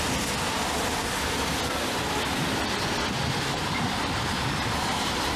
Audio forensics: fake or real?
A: real